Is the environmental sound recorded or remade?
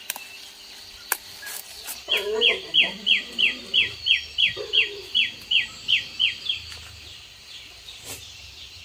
recorded